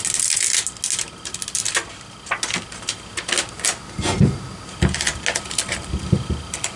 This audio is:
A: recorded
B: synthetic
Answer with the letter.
A